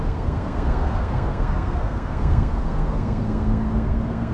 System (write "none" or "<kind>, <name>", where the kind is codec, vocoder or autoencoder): codec, SNAC